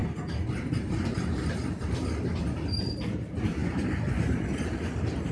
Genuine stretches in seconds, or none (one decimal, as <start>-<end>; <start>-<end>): 0.0-5.3